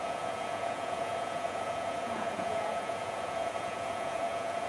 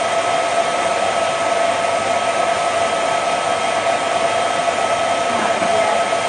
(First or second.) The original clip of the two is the second